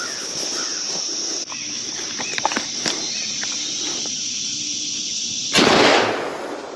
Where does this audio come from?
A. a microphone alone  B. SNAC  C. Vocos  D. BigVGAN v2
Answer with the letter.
A